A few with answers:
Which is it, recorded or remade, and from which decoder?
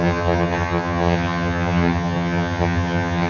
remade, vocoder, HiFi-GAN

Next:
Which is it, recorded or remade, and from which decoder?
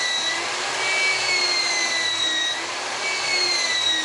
recorded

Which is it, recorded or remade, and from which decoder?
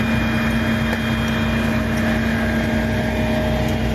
recorded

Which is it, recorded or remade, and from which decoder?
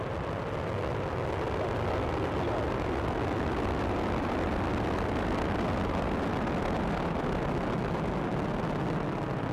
recorded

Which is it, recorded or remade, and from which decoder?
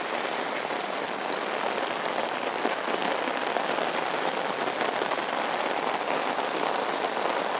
recorded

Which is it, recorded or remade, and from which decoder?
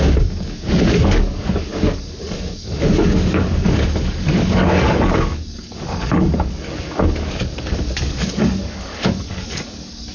remade, codec, DAC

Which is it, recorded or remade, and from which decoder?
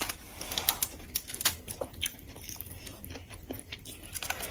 recorded